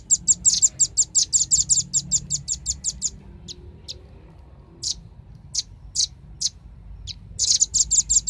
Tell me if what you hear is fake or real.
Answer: real